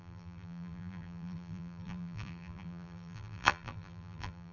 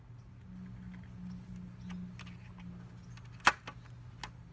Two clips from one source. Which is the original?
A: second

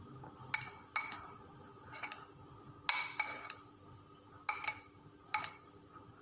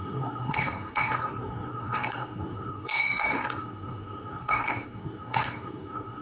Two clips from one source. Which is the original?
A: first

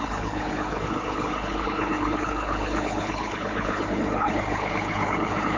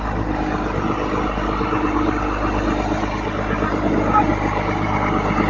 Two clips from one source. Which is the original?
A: second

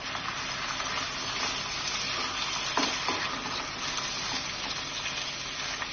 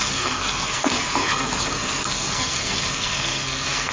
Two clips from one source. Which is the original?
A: first